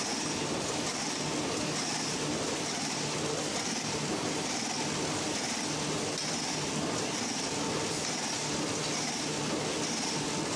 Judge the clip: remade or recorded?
recorded